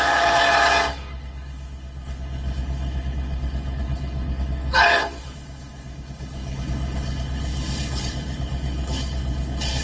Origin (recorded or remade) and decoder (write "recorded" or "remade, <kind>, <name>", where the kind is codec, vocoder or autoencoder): remade, codec, HILCodec